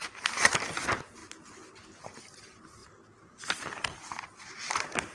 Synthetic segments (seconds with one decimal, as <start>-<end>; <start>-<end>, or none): 0.0-1.2; 2.0-5.1